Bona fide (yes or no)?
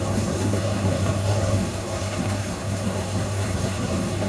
no